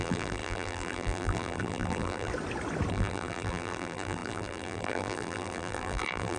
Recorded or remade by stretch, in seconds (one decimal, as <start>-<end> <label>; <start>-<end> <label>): 0.0-2.3 remade; 2.3-2.9 recorded; 2.9-6.4 remade